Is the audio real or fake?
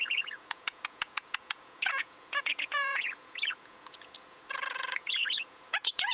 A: fake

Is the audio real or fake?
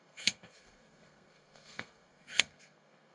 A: fake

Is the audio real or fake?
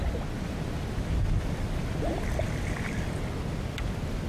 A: real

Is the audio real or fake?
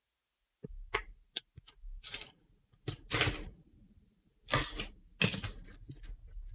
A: real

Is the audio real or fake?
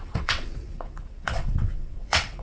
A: fake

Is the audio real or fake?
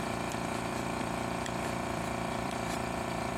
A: fake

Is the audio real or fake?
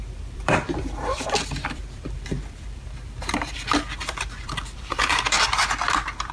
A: fake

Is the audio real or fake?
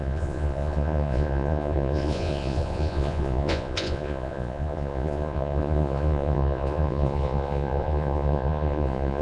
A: fake